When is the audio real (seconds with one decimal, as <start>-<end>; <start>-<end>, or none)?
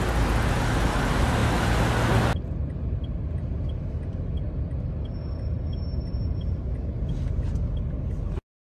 0.0-8.6